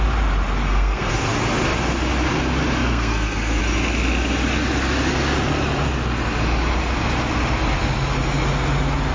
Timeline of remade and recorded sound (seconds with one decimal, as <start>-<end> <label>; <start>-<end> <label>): 0.0-0.6 recorded; 0.6-1.1 remade; 1.1-2.8 recorded; 2.8-3.6 remade; 3.6-9.1 recorded